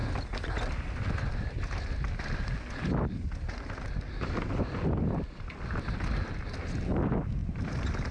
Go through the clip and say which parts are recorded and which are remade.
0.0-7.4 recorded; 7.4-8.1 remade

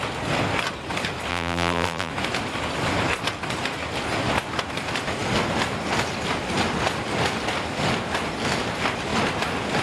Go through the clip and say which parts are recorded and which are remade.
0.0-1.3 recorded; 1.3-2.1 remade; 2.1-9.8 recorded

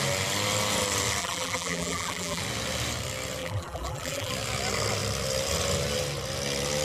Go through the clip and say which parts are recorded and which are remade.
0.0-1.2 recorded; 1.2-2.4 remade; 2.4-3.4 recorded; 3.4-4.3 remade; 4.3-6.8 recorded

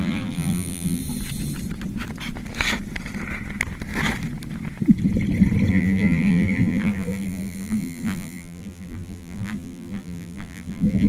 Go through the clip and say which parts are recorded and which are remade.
0.0-1.0 remade; 1.0-5.7 recorded; 5.7-11.1 remade

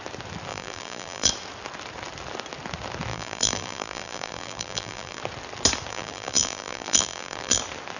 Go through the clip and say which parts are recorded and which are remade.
0.0-0.5 recorded; 0.5-1.3 remade; 1.3-3.1 recorded; 3.1-5.2 remade; 5.2-5.9 recorded; 5.9-7.6 remade; 7.6-8.0 recorded

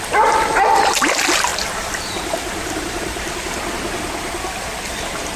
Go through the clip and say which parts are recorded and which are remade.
0.0-1.5 recorded; 1.5-3.7 remade; 3.7-5.4 recorded

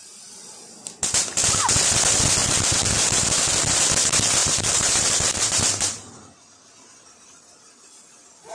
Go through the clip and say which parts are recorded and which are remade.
0.0-2.4 recorded; 2.4-3.8 remade; 3.8-4.4 recorded; 4.4-6.2 remade; 6.2-8.5 recorded